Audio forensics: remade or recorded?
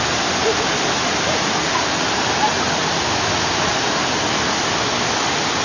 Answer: recorded